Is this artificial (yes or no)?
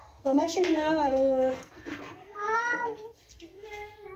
yes